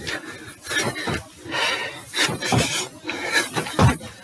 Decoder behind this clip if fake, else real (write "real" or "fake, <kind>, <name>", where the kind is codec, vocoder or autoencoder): real